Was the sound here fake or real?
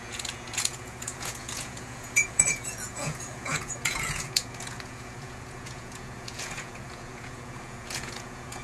fake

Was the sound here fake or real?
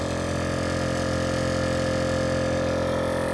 real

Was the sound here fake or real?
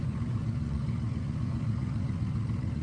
fake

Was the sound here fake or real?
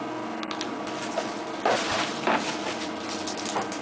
real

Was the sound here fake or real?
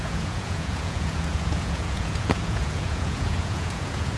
fake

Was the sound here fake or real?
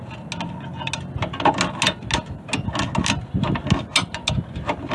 real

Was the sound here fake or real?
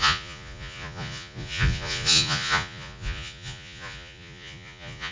fake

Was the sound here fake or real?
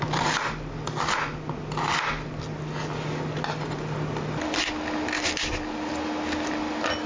real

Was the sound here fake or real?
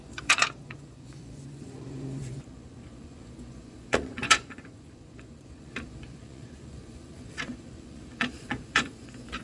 fake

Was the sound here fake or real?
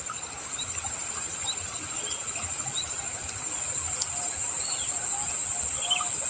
real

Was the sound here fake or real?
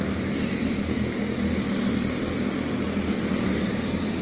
real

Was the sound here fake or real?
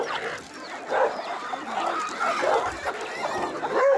real